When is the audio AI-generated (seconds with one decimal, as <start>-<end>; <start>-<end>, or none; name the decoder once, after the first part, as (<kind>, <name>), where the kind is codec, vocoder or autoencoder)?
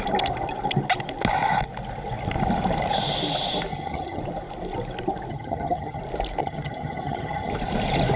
3.7-4.2 (vocoder, HiFi-GAN); 5.3-6.0; 6.4-7.5